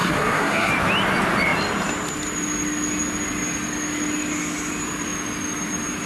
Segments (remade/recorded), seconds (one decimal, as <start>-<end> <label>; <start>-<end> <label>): 0.0-0.7 remade; 0.7-6.1 recorded